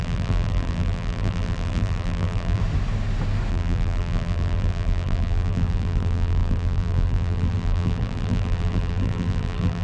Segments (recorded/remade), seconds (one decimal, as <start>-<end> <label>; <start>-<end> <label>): 0.0-2.6 remade; 2.6-3.5 recorded; 3.5-9.8 remade